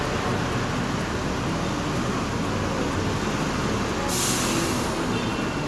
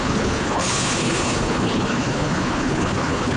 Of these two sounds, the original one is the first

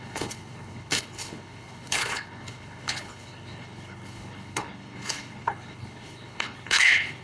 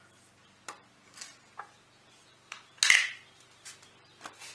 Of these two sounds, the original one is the second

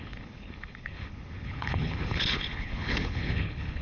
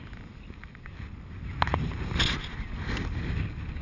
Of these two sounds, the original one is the second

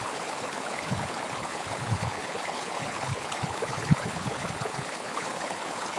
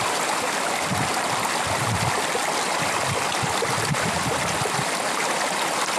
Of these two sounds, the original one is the second